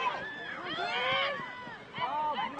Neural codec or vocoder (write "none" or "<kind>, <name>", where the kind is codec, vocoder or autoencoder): none